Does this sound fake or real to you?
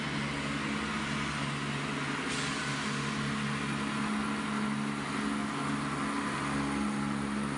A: real